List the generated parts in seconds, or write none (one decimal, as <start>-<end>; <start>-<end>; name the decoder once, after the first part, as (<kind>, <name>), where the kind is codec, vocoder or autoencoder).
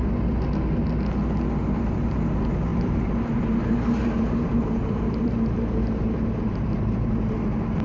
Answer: 2.7-7.3 (vocoder, BigVGAN v2)